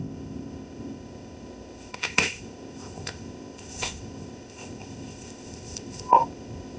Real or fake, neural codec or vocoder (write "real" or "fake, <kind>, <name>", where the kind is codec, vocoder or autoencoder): fake, codec, ZipCodec